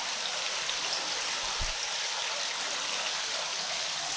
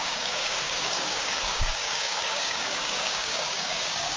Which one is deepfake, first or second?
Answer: second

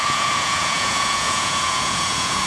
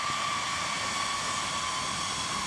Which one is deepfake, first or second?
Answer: first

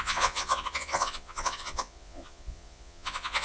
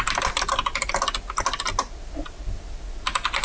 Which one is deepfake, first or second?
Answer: first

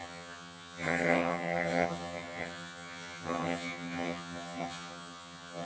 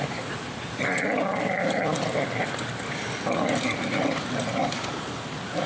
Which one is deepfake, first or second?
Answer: first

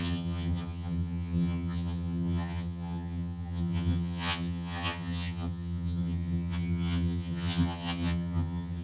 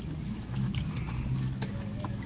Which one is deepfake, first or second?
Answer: first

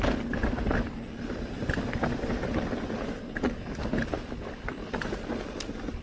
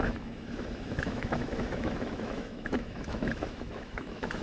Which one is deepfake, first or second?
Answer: second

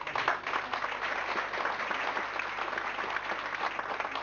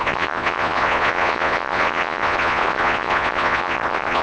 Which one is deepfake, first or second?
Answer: second